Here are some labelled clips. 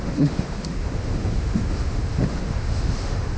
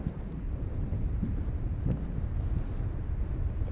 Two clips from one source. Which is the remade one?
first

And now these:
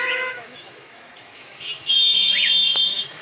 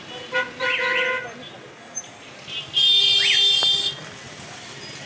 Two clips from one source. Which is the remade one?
first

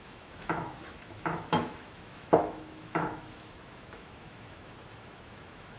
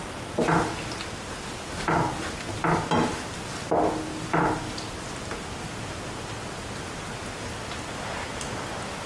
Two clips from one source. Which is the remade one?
first